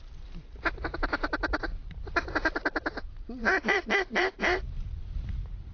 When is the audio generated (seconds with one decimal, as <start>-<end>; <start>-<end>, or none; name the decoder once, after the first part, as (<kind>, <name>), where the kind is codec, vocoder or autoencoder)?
0.0-5.7 (vocoder, BigVGAN v2)